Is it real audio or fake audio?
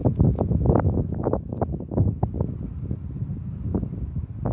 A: real